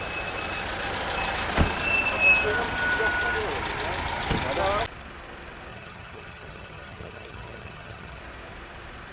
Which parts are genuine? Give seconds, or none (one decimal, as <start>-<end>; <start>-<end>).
0.0-5.7; 8.2-9.1